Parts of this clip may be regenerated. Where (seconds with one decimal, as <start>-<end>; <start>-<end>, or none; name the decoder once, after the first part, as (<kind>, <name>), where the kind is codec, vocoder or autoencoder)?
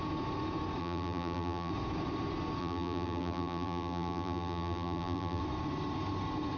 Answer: 0.8-1.7 (vocoder, BigVGAN v2); 2.6-5.4